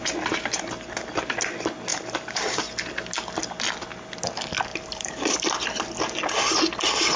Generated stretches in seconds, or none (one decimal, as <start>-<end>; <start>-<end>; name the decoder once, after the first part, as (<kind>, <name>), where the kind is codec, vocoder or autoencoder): 1.9-3.1 (vocoder, BigVGAN v2); 4.7-5.5